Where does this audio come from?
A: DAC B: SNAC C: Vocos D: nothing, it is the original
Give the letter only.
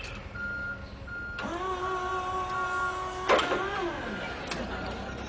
D